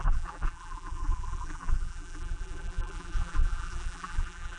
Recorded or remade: remade